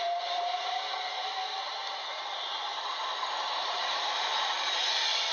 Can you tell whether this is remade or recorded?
remade